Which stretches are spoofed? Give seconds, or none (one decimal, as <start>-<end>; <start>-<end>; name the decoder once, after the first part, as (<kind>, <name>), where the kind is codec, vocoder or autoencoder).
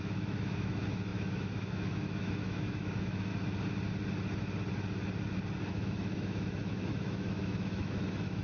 0.0-3.3 (autoencoder, DAC-VAE); 5.7-8.4